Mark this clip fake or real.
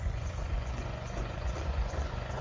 fake